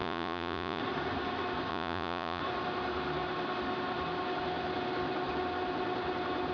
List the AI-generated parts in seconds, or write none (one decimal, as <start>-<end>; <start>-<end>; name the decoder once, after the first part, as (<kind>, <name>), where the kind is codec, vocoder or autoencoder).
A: 0.0-0.8 (vocoder, Vocos); 1.7-2.4